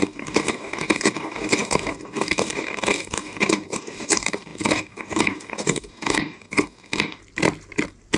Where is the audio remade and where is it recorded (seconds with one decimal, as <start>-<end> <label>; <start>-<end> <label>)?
0.0-7.2 remade; 7.2-8.2 recorded